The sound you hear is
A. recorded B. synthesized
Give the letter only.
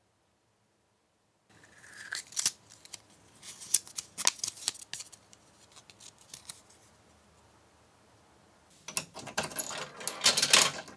A